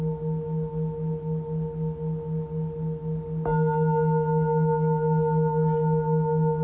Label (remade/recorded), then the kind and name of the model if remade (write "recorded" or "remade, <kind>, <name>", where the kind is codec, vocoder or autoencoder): recorded